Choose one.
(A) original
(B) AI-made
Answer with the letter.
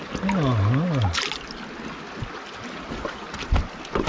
A